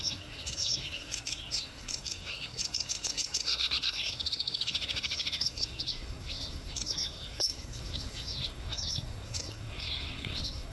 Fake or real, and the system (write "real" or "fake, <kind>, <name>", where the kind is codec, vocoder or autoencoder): fake, codec, SNAC